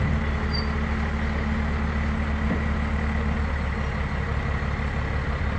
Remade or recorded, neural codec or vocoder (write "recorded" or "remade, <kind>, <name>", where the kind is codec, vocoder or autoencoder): recorded